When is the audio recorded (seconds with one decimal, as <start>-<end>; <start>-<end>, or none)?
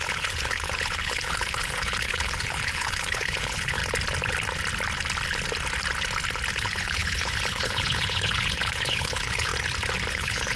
3.8-6.5; 9.5-10.1